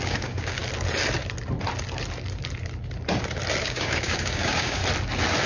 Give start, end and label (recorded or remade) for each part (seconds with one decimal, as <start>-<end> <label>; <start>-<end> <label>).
0.0-0.6 remade; 0.6-3.6 recorded; 3.6-4.8 remade; 4.8-5.5 recorded